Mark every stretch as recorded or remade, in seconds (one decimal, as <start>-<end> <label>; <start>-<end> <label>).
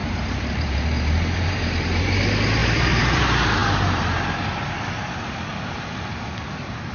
0.0-2.2 remade; 2.2-2.6 recorded; 2.6-3.2 remade; 3.2-6.9 recorded